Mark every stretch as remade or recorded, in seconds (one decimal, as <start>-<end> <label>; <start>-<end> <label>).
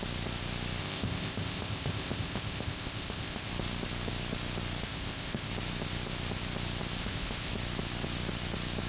0.0-0.8 recorded; 0.8-3.5 remade; 3.5-4.8 recorded; 4.8-5.5 remade; 5.5-7.0 recorded; 7.0-7.5 remade; 7.5-8.9 recorded